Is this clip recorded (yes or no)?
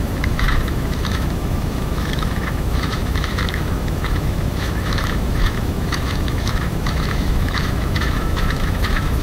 no